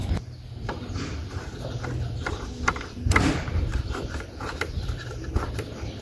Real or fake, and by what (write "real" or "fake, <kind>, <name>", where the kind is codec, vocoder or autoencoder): real